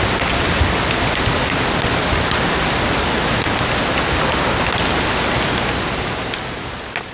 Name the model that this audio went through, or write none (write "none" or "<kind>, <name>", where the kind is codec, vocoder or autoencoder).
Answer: none